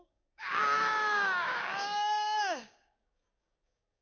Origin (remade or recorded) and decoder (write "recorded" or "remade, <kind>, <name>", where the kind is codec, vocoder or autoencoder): remade, codec, DAC